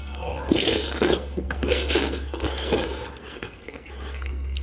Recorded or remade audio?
remade